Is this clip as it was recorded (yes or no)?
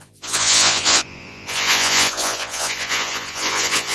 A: no